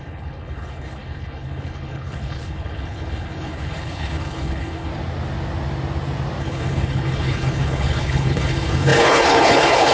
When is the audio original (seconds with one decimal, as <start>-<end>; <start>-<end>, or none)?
4.9-6.4

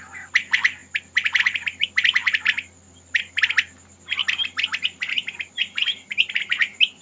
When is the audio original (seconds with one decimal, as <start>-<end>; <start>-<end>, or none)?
0.0-7.0